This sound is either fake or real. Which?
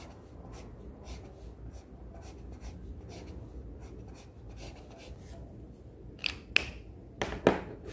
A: real